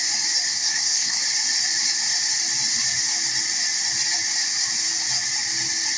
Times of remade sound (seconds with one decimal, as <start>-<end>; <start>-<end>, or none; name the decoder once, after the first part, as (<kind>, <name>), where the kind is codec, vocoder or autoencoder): 0.5-1.2 (codec, SNAC)